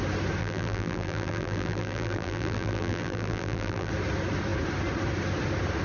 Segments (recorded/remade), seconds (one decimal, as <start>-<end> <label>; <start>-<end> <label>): 0.0-0.4 recorded; 0.4-3.9 remade; 3.9-5.8 recorded

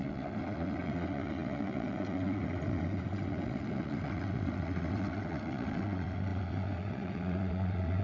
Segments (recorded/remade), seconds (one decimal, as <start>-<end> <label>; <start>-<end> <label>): 0.0-8.0 remade

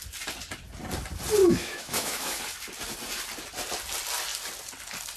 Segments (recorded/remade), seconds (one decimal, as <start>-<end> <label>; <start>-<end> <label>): 0.0-1.4 recorded; 1.4-2.4 remade; 2.4-5.2 recorded

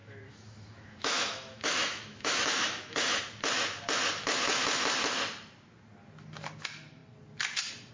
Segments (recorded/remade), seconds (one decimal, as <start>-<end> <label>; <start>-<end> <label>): 0.0-3.2 remade; 3.2-7.9 recorded

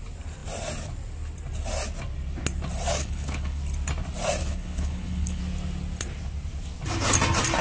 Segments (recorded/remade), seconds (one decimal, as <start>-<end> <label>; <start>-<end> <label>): 0.0-3.0 recorded; 3.0-3.6 remade; 3.6-4.4 recorded; 4.4-5.4 remade; 5.4-7.6 recorded